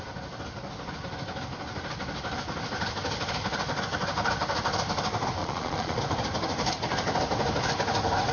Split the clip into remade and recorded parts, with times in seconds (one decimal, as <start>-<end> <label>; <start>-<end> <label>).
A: 0.0-5.4 recorded; 5.4-6.0 remade; 6.0-8.3 recorded